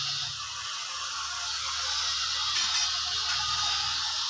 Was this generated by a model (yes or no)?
no